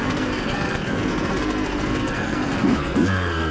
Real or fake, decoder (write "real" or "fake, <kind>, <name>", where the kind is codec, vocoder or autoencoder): fake, codec, SNAC